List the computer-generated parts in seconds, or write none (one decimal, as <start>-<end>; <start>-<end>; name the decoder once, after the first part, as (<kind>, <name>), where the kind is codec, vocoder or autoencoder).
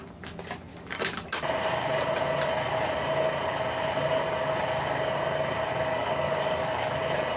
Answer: 0.7-1.4 (codec, DAC); 5.9-7.0